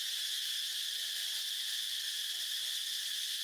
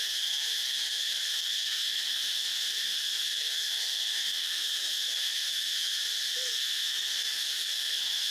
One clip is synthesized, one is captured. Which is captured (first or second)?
first